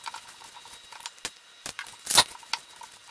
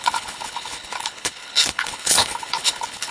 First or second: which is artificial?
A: second